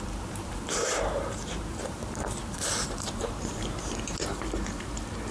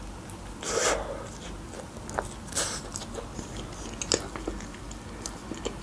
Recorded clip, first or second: second